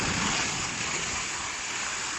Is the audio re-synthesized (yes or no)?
yes